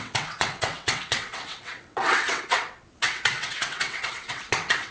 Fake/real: fake